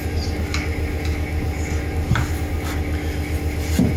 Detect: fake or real real